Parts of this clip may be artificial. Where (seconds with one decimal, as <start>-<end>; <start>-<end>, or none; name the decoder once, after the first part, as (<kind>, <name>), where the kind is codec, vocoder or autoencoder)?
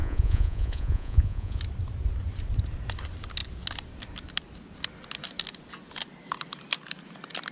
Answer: 0.0-1.6 (vocoder, Vocos)